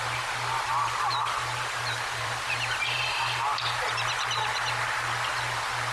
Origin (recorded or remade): remade